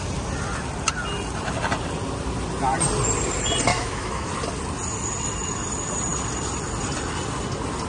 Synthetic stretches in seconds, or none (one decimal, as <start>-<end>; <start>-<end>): 3.7-4.3